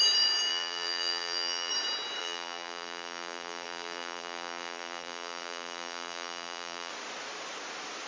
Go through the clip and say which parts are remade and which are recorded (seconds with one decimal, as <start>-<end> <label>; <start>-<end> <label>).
0.0-0.5 recorded; 0.5-1.7 remade; 1.7-2.2 recorded; 2.2-6.9 remade; 6.9-8.1 recorded